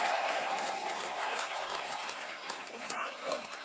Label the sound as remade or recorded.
remade